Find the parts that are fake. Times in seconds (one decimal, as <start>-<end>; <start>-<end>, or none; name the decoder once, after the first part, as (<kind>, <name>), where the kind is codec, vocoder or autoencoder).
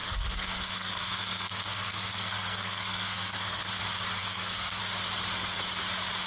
0.0-3.8 (codec, SNAC); 4.2-4.8